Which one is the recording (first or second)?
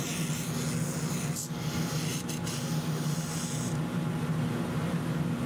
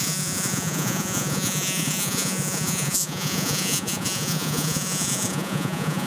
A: first